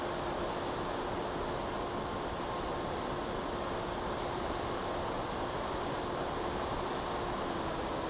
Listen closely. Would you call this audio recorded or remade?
recorded